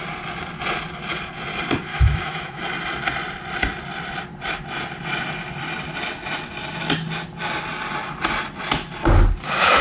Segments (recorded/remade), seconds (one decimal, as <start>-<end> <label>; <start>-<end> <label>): 0.0-1.9 recorded; 1.9-2.6 remade; 2.6-9.8 recorded